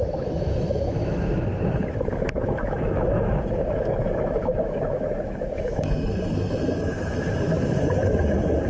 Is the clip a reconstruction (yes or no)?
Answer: yes